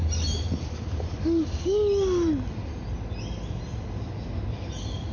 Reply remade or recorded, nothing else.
recorded